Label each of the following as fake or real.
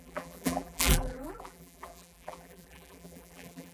fake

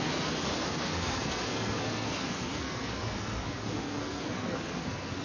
fake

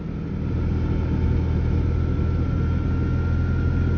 real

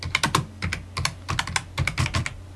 real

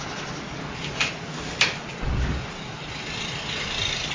real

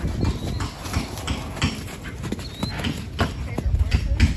real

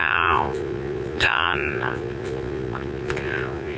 fake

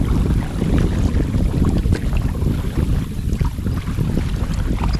real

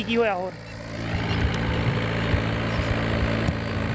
real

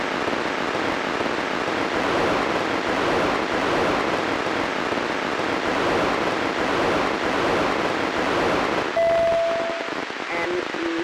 real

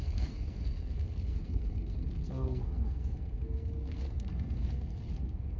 fake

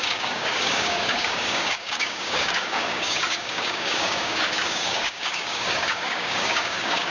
fake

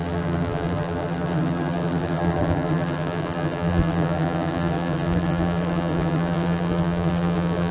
fake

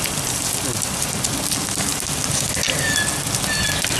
real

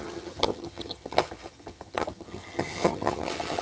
fake